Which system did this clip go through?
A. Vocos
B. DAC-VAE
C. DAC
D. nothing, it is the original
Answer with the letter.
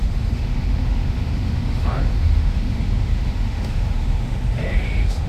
B